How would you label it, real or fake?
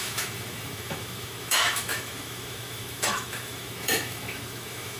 fake